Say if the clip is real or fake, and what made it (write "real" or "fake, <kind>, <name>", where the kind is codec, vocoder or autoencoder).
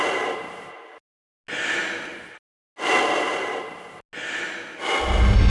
real